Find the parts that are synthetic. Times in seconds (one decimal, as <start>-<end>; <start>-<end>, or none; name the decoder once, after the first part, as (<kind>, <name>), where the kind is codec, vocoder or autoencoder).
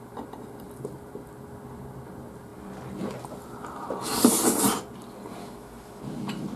5.4-6.0 (autoencoder, DAC-VAE)